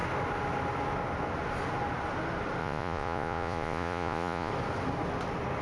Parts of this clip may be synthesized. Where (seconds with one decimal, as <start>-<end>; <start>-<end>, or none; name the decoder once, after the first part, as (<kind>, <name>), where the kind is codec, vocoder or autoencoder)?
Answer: 2.6-4.5 (vocoder, Vocos)